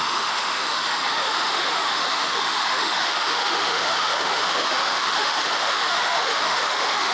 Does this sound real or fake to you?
fake